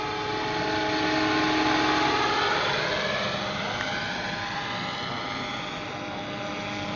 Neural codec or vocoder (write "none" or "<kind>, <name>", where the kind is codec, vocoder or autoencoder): none